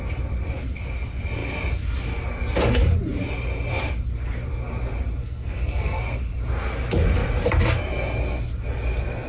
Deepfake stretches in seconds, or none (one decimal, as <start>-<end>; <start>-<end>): 5.2-6.0